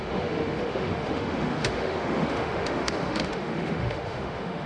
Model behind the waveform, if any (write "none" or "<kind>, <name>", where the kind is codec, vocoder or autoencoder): autoencoder, DAC-VAE